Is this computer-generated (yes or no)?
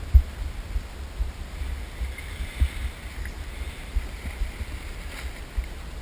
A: no